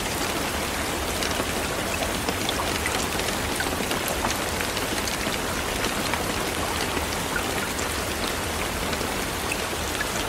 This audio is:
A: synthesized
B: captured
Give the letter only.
B